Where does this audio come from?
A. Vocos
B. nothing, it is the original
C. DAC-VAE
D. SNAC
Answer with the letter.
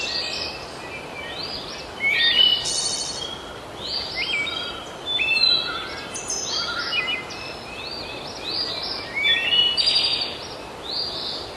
B